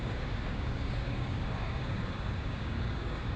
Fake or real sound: fake